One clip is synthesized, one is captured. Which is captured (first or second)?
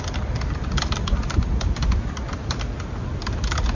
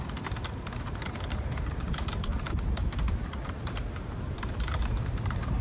first